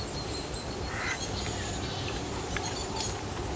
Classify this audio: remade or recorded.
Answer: remade